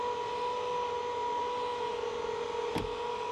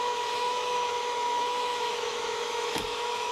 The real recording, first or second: first